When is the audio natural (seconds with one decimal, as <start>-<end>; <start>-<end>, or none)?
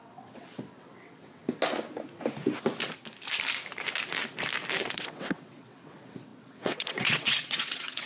1.4-4.9